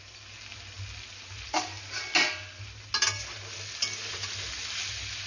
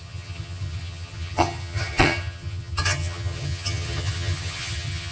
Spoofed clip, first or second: second